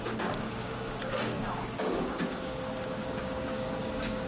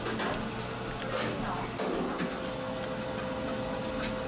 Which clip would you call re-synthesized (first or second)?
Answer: first